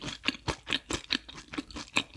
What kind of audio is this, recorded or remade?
recorded